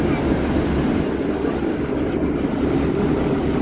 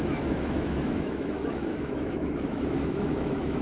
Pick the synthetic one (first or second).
second